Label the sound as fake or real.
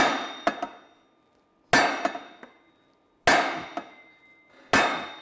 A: real